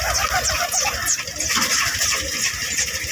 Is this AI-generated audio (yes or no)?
no